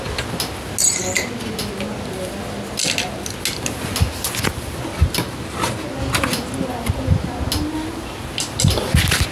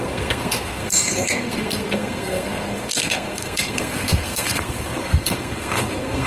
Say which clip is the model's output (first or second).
second